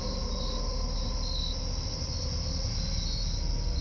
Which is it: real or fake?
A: real